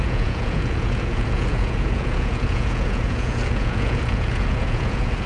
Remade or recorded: remade